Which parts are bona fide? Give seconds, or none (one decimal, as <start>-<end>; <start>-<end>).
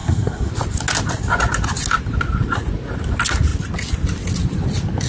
0.5-5.1